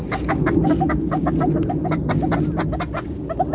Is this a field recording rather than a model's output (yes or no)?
yes